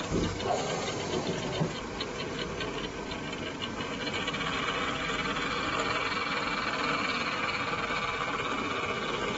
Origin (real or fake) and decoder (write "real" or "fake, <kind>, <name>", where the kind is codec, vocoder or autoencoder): real